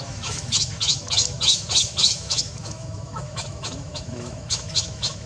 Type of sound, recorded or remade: remade